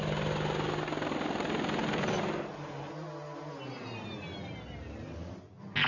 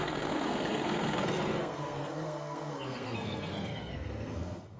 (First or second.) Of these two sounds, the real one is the first